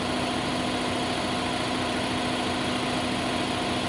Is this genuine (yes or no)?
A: yes